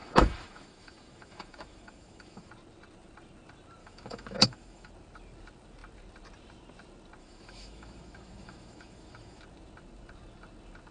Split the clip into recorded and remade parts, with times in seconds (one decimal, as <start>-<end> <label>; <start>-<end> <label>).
0.0-2.5 remade; 2.5-3.8 recorded; 3.8-4.9 remade; 4.9-7.2 recorded; 7.2-9.4 remade; 9.4-10.9 recorded